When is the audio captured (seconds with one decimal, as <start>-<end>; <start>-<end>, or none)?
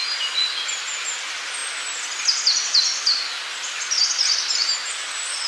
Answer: 0.0-5.5